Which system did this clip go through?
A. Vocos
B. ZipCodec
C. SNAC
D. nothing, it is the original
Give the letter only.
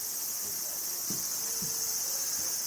D